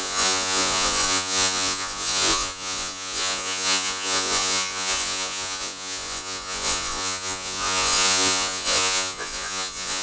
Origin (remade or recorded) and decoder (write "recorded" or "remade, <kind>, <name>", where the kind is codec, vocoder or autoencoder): remade, vocoder, Vocos